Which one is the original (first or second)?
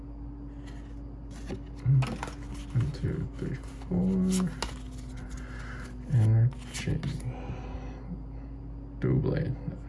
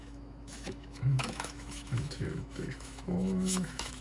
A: first